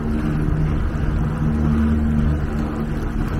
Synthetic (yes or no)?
no